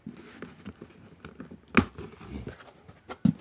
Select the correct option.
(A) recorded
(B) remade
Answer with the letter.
A